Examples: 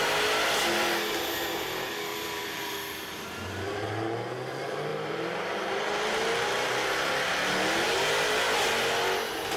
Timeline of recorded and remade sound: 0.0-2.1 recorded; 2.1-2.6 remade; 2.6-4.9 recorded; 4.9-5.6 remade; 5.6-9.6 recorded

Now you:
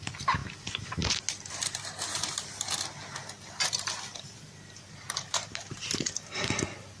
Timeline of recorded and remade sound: 0.0-0.4 recorded; 0.4-1.2 remade; 1.2-4.1 recorded; 4.1-6.6 remade; 6.6-7.0 recorded

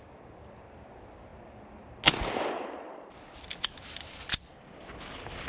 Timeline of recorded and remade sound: 0.0-5.5 recorded

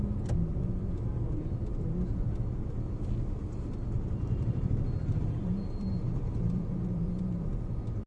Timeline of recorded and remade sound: 0.0-5.1 recorded; 5.1-7.5 remade; 7.5-8.1 recorded

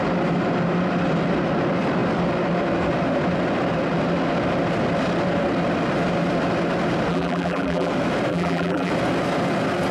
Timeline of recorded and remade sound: 0.0-7.1 recorded; 7.1-7.9 remade; 7.9-8.3 recorded; 8.3-8.9 remade; 8.9-9.9 recorded